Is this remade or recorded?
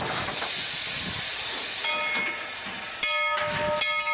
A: recorded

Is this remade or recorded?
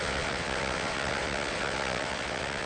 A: remade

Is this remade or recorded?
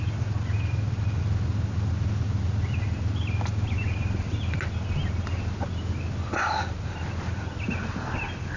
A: recorded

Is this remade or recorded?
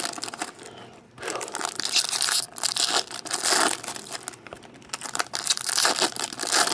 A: recorded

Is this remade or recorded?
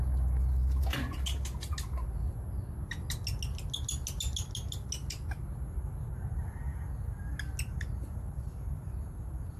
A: recorded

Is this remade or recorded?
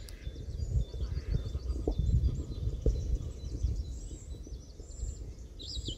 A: remade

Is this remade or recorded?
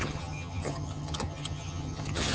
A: remade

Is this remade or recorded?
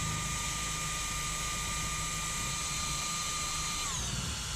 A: remade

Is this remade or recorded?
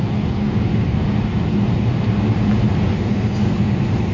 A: recorded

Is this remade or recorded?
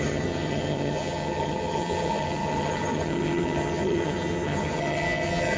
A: remade